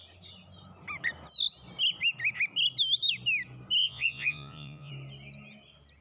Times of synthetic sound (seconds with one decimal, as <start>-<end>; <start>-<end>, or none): 3.8-4.9